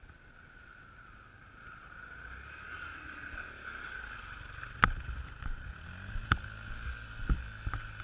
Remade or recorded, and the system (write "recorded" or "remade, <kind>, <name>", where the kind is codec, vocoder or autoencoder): recorded